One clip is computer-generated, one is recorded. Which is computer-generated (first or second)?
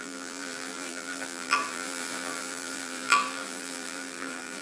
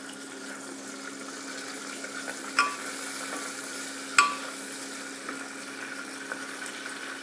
first